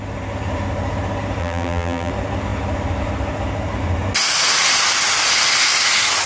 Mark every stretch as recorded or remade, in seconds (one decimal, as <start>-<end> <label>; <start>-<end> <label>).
0.0-1.4 recorded; 1.4-2.1 remade; 2.1-6.3 recorded